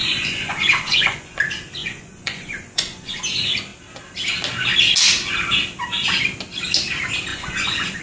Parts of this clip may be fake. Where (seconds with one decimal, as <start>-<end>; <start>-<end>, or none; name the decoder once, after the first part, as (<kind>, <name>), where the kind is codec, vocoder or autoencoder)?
0.0-1.4 (vocoder, Vocos); 1.8-3.2; 7.3-8.0